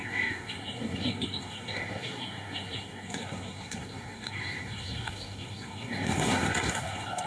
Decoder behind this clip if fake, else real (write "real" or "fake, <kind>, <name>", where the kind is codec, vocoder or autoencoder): fake, codec, SNAC